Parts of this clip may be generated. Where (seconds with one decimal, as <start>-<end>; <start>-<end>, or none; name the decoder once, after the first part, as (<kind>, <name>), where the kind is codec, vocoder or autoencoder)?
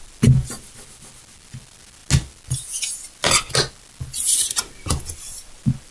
none